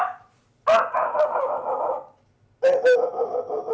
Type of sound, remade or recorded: recorded